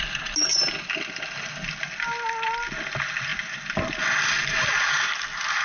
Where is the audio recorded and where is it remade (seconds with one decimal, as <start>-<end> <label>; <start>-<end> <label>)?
0.0-5.6 recorded